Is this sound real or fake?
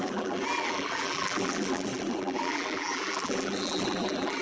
fake